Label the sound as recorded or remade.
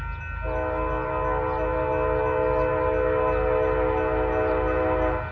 recorded